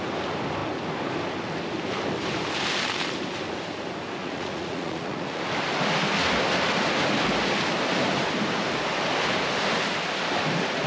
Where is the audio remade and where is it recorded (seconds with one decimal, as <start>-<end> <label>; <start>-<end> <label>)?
0.0-4.2 recorded; 4.2-5.4 remade; 5.4-10.9 recorded